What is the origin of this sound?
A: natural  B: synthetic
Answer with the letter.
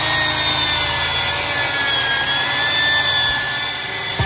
A